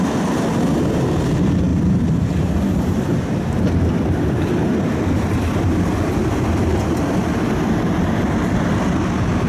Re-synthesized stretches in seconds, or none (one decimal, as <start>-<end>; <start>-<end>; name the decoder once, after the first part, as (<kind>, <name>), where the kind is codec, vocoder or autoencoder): 1.7-4.5 (vocoder, BigVGAN v2); 5.9-8.7